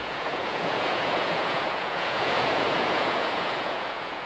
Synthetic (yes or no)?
yes